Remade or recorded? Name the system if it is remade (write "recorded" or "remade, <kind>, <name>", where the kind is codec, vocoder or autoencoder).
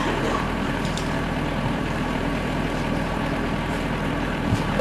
remade, vocoder, BigVGAN v2